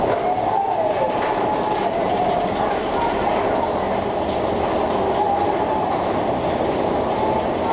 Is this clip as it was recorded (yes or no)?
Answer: yes